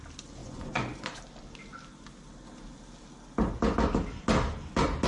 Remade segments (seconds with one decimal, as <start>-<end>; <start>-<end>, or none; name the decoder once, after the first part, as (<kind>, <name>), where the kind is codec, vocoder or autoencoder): 0.4-1.2 (vocoder, Vocos)